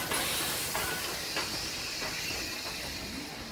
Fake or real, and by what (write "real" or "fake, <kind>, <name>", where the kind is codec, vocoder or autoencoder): real